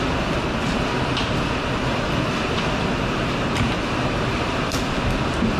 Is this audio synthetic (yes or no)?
no